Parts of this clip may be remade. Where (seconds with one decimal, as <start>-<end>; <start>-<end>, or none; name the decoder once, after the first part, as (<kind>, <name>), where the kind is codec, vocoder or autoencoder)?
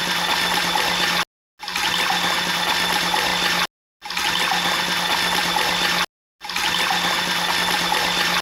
none